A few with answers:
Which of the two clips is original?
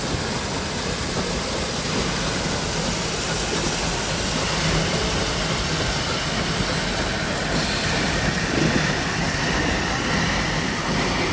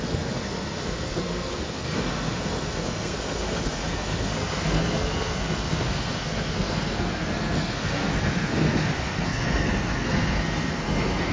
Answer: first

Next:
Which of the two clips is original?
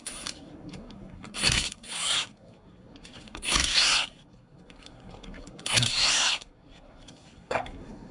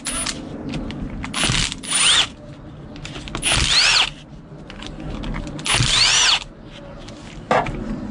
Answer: second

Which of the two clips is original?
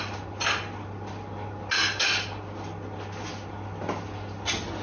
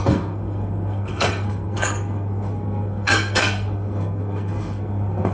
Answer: first